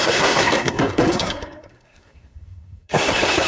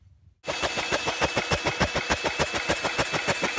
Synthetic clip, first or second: first